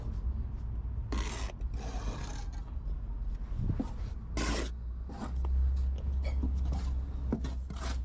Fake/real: real